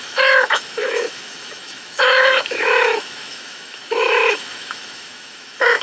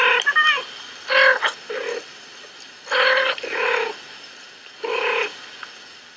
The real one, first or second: second